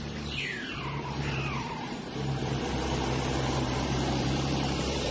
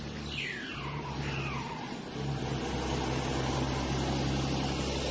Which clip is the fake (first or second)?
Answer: first